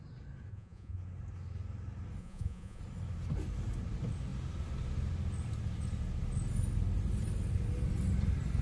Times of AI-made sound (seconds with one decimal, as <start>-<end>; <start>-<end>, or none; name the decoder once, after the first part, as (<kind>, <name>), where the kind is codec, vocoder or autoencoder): 0.5-1.0 (vocoder, Vocos); 2.2-2.8